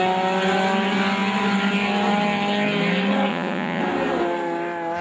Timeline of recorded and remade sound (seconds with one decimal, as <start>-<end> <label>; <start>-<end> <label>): 0.0-3.3 recorded; 3.3-3.8 remade; 3.8-5.0 recorded